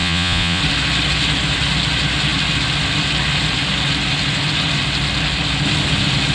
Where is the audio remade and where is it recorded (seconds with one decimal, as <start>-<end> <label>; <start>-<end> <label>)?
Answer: 0.0-0.6 remade; 0.6-6.3 recorded